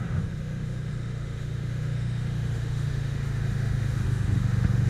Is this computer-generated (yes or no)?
yes